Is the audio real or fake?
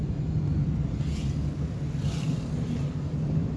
real